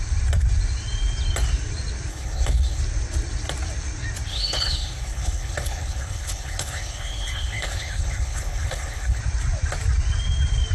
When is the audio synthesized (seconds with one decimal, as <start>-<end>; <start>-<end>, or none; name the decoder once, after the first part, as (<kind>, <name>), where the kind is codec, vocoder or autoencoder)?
2.1-2.8 (codec, HILCodec); 4.3-9.2